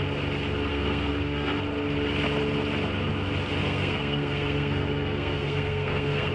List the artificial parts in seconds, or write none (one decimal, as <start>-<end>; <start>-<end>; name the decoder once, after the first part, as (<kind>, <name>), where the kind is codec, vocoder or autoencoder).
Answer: 0.7-1.6 (codec, SNAC); 3.6-6.3

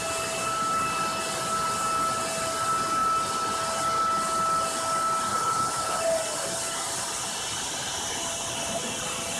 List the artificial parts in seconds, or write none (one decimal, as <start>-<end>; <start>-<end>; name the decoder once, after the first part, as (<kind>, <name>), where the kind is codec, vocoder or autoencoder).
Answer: 5.3-6.0 (codec, HILCodec)

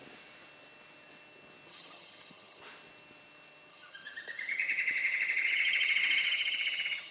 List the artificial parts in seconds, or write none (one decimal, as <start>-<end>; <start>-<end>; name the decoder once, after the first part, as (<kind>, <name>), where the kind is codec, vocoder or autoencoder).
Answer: 1.7-2.6 (vocoder, HiFi-GAN); 3.7-7.1

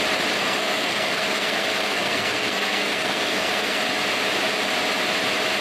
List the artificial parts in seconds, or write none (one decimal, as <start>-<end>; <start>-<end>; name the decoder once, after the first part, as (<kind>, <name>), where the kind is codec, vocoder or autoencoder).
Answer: 0.4-3.8 (codec, SNAC)

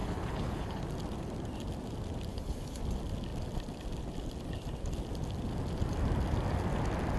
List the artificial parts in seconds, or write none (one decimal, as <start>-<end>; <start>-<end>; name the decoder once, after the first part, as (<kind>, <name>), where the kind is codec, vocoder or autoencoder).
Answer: 0.0-0.8 (codec, HILCodec); 2.3-2.8

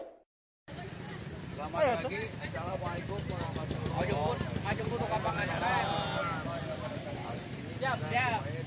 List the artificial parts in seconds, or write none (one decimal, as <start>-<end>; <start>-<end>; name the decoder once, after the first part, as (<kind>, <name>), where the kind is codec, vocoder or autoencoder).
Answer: 0.6-1.5 (vocoder, BigVGAN v2); 1.9-3.1